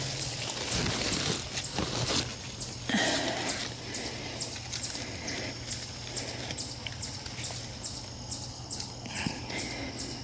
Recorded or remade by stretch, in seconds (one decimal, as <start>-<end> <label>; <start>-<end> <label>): 0.0-8.5 recorded; 8.5-9.4 remade; 9.4-10.2 recorded